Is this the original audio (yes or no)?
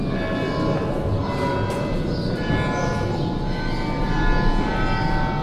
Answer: yes